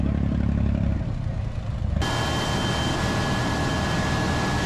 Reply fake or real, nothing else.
real